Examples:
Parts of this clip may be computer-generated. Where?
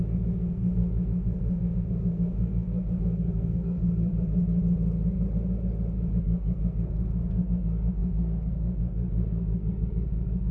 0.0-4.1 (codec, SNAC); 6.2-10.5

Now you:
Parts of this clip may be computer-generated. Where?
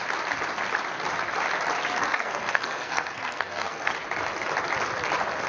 2.0-3.9 (codec, SNAC)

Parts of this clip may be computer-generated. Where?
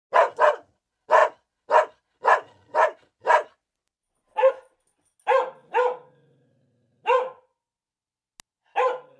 none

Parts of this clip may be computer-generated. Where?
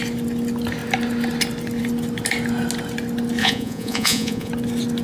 3.4-4.5 (vocoder, Vocos)